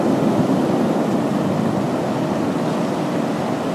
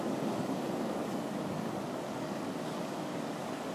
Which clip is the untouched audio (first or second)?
first